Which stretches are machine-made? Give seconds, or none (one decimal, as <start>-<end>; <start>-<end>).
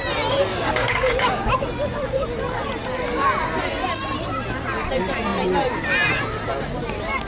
0.5-1.5